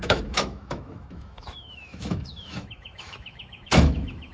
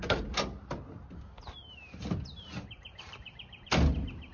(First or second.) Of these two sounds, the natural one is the second